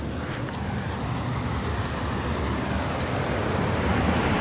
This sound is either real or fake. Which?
real